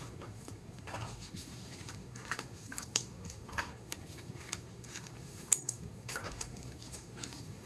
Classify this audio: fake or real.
fake